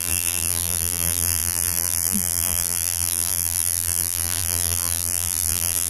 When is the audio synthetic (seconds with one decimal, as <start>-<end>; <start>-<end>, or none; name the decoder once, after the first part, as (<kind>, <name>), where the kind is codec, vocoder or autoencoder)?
0.0-5.9 (vocoder, BigVGAN v2)